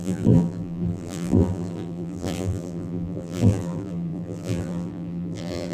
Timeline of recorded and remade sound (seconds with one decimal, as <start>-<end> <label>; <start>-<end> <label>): 0.0-5.7 remade

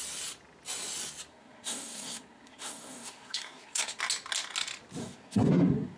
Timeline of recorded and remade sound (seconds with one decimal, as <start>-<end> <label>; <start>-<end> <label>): 0.0-1.3 recorded; 1.3-4.0 remade; 4.0-5.0 recorded; 5.0-6.0 remade

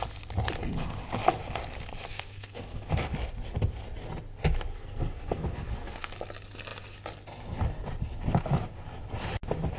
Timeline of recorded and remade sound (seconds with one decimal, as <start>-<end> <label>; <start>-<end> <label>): 0.0-2.1 recorded; 2.1-2.9 remade; 2.9-4.7 recorded; 4.7-6.1 remade; 6.1-9.8 recorded

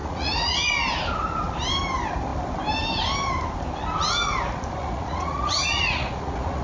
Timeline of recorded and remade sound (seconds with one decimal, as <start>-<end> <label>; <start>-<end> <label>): 0.0-0.7 remade; 0.7-4.8 recorded; 4.8-6.6 remade

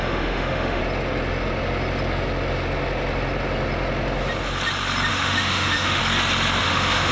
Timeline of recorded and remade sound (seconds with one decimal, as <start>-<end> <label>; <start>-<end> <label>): 0.0-0.8 remade; 0.8-5.1 recorded; 5.1-6.0 remade; 6.0-6.6 recorded; 6.6-7.1 remade